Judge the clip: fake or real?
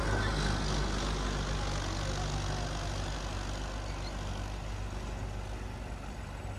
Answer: real